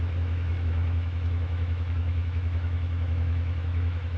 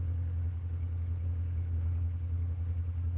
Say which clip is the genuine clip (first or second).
second